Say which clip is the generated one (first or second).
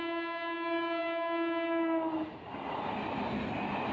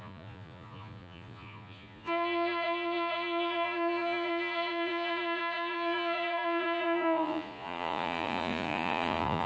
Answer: second